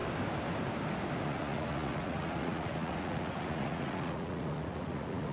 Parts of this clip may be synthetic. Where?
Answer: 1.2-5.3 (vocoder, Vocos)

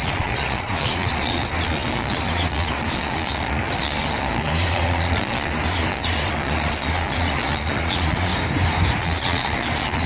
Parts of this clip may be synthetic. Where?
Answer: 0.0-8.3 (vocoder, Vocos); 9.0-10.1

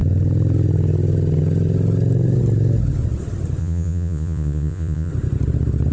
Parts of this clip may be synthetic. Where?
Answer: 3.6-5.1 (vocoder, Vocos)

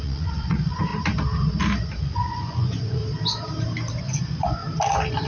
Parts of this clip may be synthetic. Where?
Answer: 0.0-0.9 (vocoder, Vocos); 2.0-3.0; 4.0-4.6

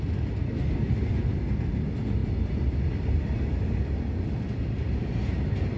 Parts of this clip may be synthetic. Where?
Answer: none

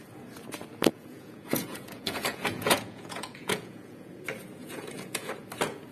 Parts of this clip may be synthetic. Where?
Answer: 0.9-4.1 (vocoder, Vocos); 4.6-5.3